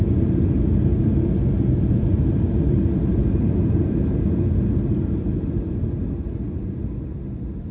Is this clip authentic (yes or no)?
yes